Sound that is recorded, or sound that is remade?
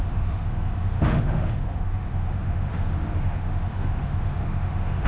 remade